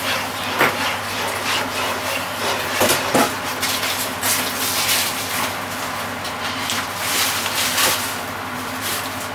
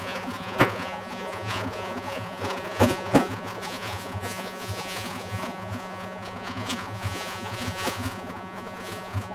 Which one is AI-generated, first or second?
second